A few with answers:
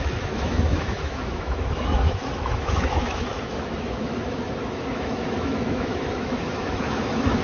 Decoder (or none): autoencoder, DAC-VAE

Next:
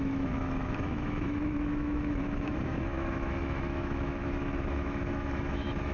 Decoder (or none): autoencoder, DAC-VAE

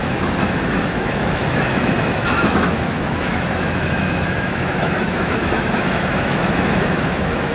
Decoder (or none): autoencoder, DAC-VAE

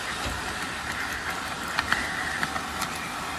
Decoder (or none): none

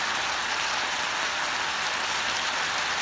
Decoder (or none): none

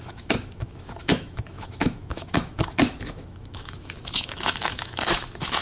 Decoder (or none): autoencoder, DAC-VAE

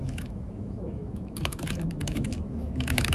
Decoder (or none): autoencoder, DAC-VAE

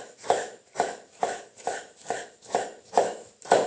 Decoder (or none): autoencoder, DAC-VAE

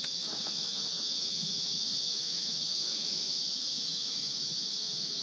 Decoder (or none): autoencoder, DAC-VAE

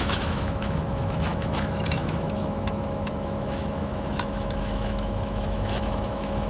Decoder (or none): autoencoder, DAC-VAE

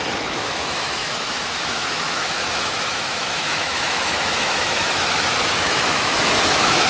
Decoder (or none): autoencoder, DAC-VAE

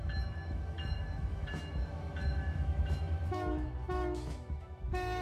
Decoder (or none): autoencoder, DAC-VAE